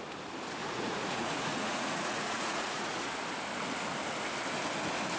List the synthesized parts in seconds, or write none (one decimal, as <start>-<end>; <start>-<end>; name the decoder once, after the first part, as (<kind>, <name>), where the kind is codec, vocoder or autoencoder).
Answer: 0.6-3.1 (vocoder, Vocos)